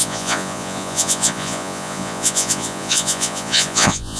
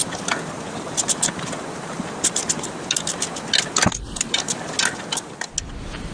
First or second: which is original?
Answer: second